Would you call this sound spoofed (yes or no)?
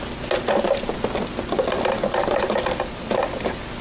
no